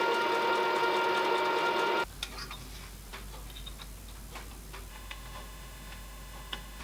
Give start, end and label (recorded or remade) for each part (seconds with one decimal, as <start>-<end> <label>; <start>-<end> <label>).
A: 0.0-4.9 recorded; 4.9-6.8 remade